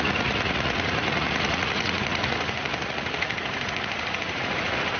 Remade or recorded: remade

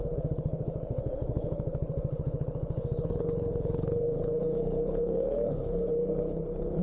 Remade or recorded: remade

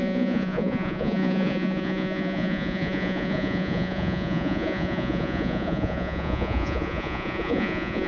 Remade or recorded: remade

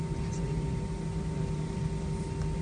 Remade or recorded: recorded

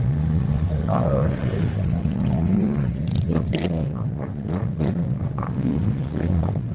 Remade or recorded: remade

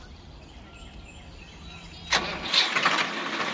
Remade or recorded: recorded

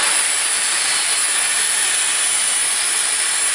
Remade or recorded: recorded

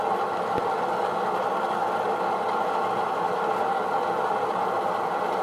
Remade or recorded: recorded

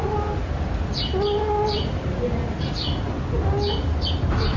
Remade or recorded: recorded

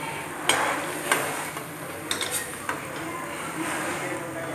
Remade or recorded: recorded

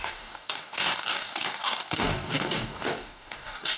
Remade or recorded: remade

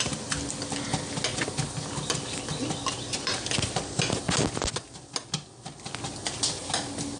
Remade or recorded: recorded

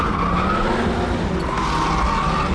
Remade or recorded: recorded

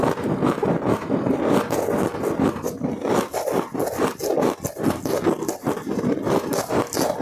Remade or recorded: recorded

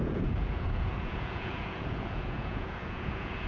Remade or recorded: remade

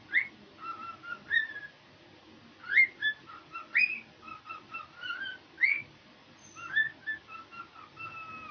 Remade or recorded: recorded